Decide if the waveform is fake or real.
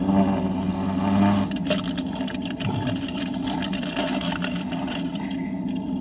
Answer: real